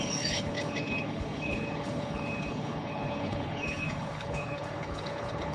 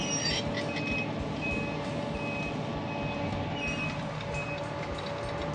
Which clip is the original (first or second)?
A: second